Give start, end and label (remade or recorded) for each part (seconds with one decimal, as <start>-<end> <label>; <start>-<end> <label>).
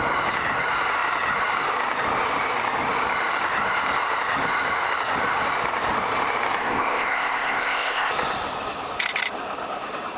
0.0-6.6 recorded; 6.6-8.1 remade; 8.1-10.2 recorded